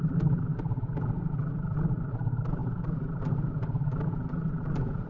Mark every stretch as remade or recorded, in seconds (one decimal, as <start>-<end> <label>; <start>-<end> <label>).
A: 0.0-0.5 remade; 0.5-2.1 recorded; 2.1-5.1 remade